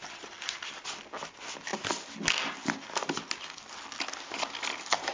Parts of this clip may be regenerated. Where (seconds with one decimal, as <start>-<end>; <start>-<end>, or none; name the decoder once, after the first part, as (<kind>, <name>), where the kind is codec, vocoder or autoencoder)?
none